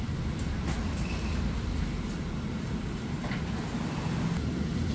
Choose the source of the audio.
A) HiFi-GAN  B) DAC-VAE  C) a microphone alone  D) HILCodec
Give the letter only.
C